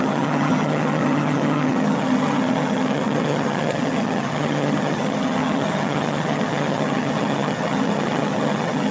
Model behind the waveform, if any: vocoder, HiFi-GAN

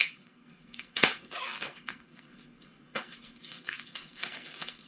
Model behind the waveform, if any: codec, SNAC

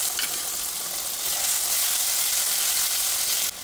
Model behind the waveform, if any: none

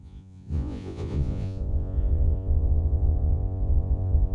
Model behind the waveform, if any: vocoder, Vocos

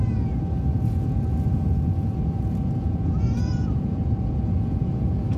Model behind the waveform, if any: vocoder, Vocos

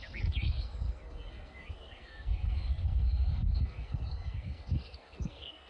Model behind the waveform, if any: codec, SNAC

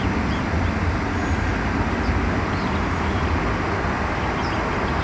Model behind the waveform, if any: none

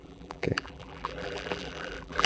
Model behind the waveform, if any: vocoder, BigVGAN v2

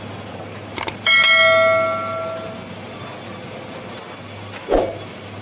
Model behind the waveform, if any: none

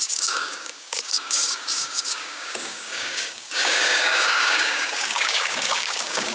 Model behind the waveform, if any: codec, DAC